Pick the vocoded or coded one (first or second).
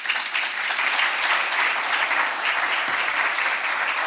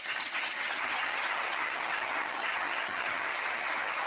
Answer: second